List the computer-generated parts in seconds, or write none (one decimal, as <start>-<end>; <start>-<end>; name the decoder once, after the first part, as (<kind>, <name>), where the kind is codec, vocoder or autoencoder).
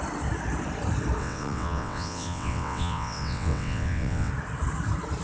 1.2-4.3 (vocoder, WaveNeXt)